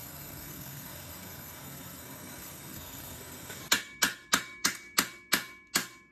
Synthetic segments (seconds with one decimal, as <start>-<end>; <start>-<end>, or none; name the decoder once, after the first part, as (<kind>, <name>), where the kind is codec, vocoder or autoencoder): 0.0-3.6 (codec, SNAC)